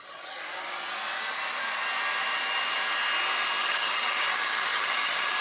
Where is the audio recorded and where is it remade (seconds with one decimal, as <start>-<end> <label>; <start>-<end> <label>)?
0.0-0.4 remade; 0.4-3.6 recorded; 3.6-5.4 remade